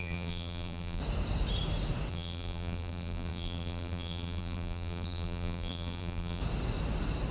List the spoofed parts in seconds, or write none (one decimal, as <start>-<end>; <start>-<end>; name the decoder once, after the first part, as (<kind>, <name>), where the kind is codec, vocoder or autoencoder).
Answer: 0.0-1.0 (vocoder, BigVGAN v2); 2.1-6.4